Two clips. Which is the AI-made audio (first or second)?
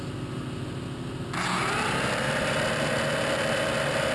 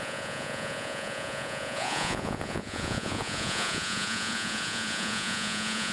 second